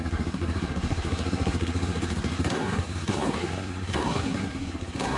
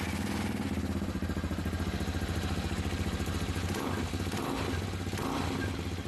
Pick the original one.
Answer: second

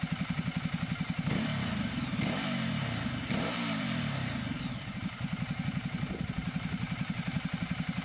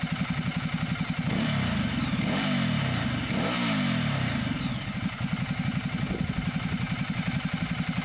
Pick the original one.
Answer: second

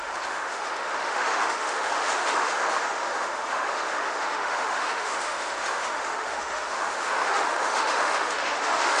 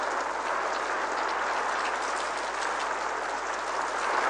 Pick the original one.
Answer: second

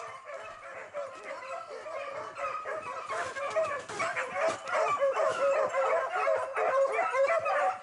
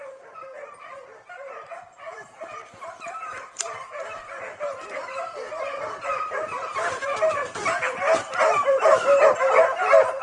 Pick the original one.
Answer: first